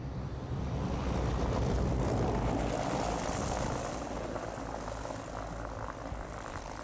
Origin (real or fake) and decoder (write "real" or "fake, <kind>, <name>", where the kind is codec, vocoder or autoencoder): real